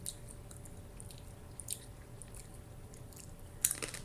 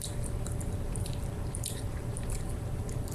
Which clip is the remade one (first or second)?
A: second